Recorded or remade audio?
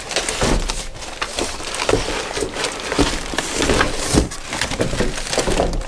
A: recorded